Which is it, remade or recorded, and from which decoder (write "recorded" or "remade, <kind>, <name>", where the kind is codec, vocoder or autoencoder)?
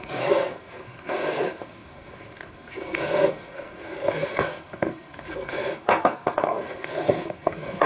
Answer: remade, codec, SNAC